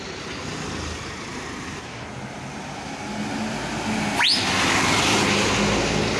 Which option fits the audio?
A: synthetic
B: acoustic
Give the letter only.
B